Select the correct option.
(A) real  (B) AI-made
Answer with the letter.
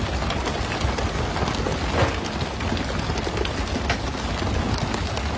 A